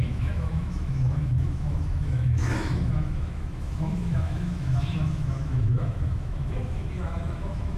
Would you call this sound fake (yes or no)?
yes